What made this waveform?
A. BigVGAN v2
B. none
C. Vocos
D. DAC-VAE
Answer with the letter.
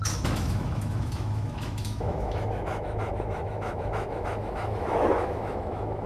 D